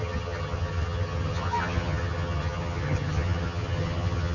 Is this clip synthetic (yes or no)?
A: yes